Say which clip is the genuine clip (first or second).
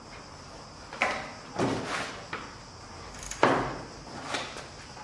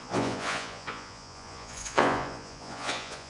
first